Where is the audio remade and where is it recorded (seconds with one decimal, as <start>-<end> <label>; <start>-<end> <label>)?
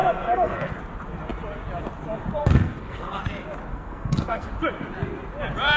0.0-0.7 remade; 0.7-2.4 recorded; 2.4-3.2 remade; 3.2-3.7 recorded; 3.7-4.5 remade; 4.5-5.8 recorded